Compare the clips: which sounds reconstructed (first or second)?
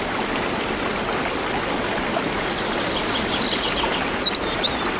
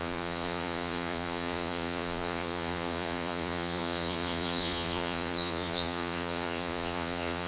second